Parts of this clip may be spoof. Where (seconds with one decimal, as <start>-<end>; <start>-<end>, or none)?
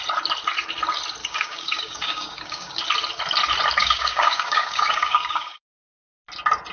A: 1.2-2.8; 3.8-5.9